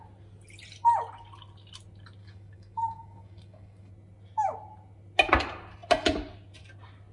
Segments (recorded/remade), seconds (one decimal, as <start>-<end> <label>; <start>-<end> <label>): 0.0-2.2 recorded; 2.2-3.9 remade; 3.9-7.1 recorded